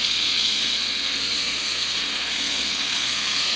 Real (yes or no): no